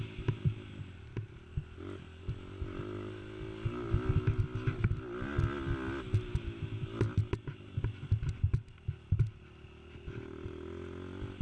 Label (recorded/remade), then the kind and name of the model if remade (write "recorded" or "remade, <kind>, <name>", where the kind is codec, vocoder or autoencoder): recorded